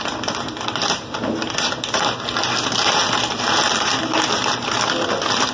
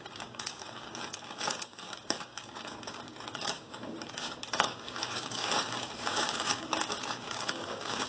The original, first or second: first